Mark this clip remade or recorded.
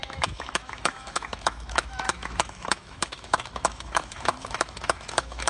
remade